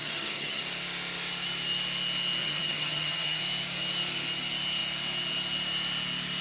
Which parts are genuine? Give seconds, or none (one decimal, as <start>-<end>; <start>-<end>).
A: 0.6-2.4; 3.4-6.4

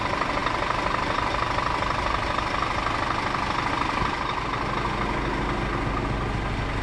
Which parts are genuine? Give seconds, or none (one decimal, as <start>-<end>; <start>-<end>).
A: 0.0-6.8

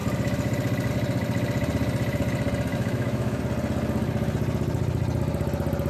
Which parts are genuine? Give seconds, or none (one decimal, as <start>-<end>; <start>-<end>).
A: 0.0-2.7; 3.4-5.9

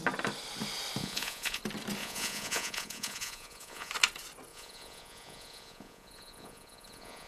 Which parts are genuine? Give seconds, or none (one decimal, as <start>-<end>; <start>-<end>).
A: 0.0-1.0; 1.6-2.0; 3.9-4.5

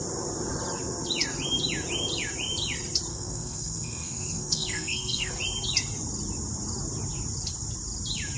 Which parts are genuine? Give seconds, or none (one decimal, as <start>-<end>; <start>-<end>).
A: 0.0-3.1; 5.3-8.4

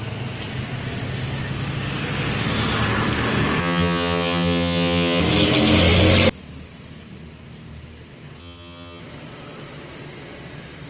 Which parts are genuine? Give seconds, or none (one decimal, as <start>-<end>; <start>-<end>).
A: 0.0-3.6; 5.2-8.4; 9.0-10.9